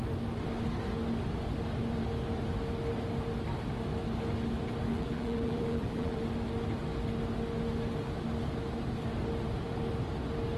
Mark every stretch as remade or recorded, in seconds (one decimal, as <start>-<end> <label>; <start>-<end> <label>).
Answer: 0.0-4.9 recorded; 4.9-6.2 remade; 6.2-10.6 recorded